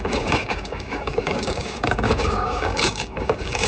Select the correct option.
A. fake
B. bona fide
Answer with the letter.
A